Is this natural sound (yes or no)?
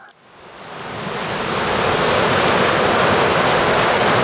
yes